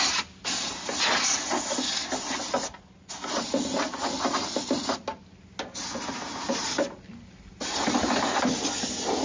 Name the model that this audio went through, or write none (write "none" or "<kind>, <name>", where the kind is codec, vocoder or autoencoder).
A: none